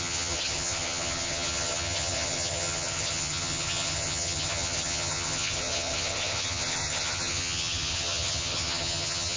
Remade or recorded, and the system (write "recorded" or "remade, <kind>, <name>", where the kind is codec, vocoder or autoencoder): remade, vocoder, HiFi-GAN